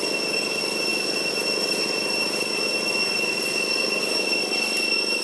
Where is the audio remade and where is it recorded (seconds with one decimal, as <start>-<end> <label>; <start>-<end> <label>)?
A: 0.0-5.2 recorded